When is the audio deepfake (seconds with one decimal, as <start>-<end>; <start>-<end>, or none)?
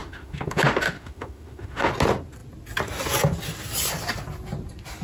0.0-1.9